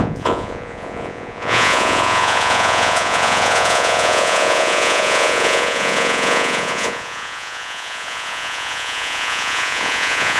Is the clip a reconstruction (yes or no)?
yes